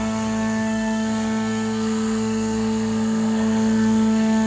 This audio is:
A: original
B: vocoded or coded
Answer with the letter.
B